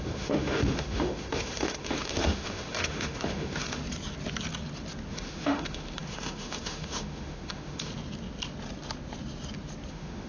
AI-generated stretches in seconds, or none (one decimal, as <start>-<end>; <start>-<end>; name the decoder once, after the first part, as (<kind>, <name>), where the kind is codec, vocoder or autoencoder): 0.0-3.8 (autoencoder, DAC-VAE); 5.1-7.9; 9.9-10.3

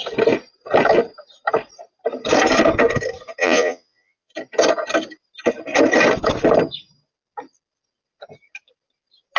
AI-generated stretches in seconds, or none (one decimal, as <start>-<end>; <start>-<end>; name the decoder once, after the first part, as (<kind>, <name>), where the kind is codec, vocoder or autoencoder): 3.4-4.3 (vocoder, Vocos)

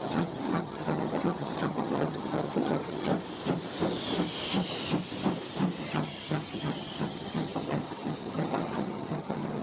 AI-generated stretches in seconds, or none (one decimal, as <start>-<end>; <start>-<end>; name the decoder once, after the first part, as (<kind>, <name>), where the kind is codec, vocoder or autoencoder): 0.0-3.1 (vocoder, HiFi-GAN); 5.8-9.6

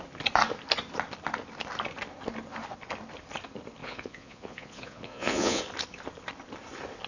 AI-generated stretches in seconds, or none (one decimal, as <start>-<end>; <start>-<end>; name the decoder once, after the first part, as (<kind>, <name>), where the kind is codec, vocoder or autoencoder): 3.8-5.6 (vocoder, Vocos)

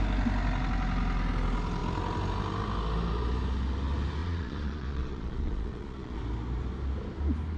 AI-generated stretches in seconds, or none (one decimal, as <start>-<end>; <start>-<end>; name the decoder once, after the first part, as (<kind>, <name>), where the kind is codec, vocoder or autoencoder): 4.2-6.2 (vocoder, Vocos)